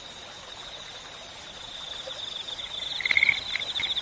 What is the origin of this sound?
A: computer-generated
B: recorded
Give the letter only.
B